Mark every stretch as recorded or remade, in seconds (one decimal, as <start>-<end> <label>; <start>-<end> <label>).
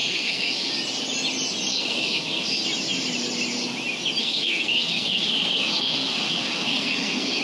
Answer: 0.0-0.7 remade; 0.7-1.7 recorded; 1.7-2.6 remade; 2.6-4.2 recorded; 4.2-7.4 remade